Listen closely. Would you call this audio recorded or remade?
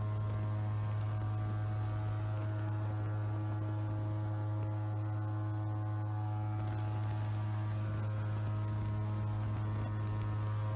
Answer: recorded